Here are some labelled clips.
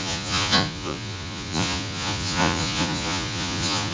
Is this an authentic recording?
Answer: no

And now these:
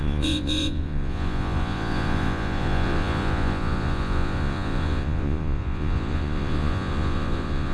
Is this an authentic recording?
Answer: no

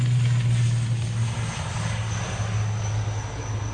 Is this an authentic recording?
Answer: yes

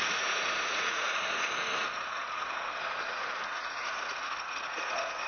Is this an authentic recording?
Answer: no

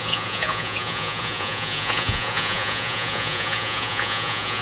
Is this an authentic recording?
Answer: no